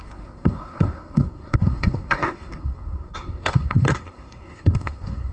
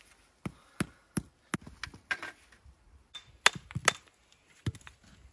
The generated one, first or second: first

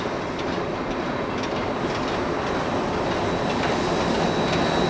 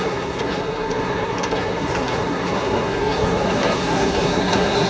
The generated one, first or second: second